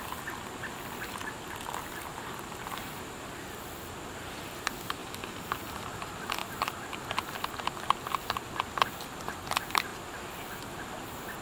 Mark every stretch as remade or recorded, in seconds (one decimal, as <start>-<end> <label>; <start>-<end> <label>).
0.0-2.1 recorded; 2.1-2.8 remade; 2.8-5.0 recorded; 5.0-5.7 remade; 5.7-11.4 recorded